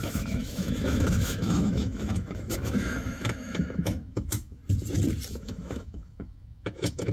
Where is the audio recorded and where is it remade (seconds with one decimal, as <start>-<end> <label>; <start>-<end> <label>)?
0.0-4.6 remade; 4.6-5.3 recorded; 5.3-7.1 remade